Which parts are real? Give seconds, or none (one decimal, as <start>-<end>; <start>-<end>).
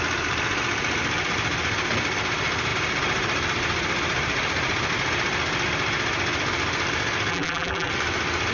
0.0-7.3; 7.9-8.5